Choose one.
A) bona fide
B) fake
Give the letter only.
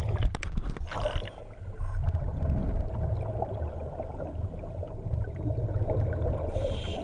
A